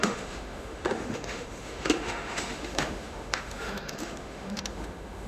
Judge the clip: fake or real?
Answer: fake